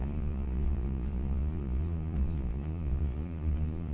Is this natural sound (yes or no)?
no